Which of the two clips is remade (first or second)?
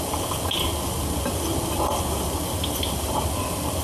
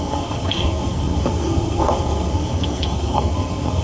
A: second